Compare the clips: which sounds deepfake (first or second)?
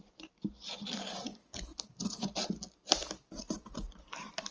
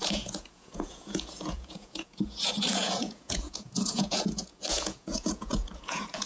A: second